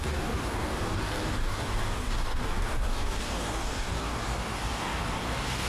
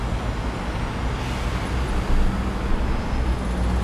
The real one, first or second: second